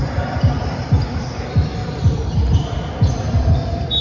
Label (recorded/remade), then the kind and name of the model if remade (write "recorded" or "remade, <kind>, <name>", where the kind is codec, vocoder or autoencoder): remade, vocoder, BigVGAN v2